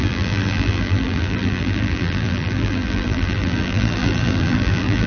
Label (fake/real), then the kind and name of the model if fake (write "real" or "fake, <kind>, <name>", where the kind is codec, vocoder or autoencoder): fake, vocoder, BigVGAN v2